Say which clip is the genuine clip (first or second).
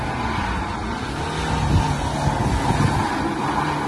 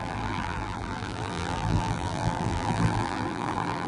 first